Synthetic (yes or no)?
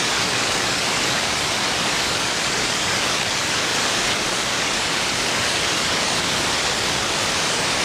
yes